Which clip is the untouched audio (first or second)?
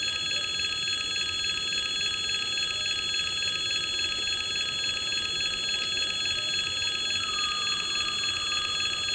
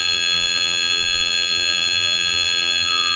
first